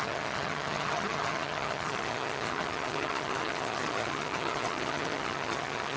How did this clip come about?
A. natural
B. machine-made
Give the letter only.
B